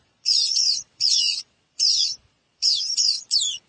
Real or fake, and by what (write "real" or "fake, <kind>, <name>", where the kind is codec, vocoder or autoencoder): fake, vocoder, Vocos